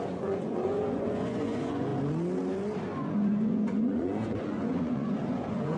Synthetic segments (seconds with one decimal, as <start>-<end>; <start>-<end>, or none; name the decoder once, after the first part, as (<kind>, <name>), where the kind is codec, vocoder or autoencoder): 0.0-1.9 (vocoder, Vocos); 3.0-5.8